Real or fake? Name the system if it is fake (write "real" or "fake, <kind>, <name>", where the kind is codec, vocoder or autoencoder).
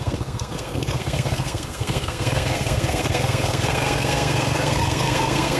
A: fake, codec, SNAC